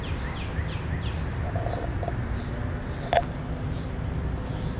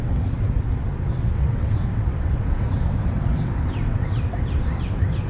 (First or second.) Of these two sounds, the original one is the first